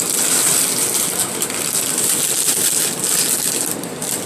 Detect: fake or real real